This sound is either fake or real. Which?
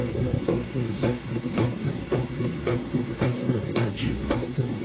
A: fake